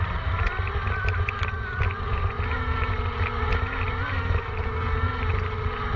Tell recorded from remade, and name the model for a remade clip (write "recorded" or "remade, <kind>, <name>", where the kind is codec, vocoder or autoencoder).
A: recorded